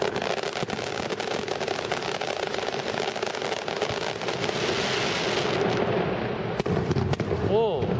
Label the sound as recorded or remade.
recorded